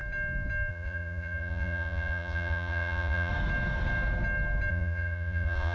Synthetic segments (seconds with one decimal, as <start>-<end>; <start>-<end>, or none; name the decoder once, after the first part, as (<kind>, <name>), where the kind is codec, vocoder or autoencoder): 0.7-3.3 (vocoder, Vocos); 4.7-5.7